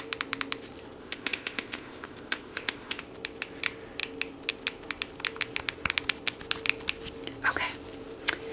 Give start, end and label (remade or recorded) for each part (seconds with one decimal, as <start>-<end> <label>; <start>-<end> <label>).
0.0-1.0 recorded; 1.0-3.0 remade; 3.0-8.5 recorded